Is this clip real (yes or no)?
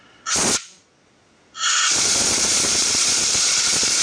no